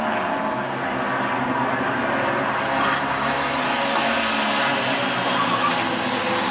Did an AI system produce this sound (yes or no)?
no